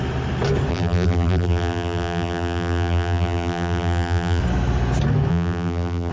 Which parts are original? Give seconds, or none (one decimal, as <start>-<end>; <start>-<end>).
0.0-0.7; 4.4-5.3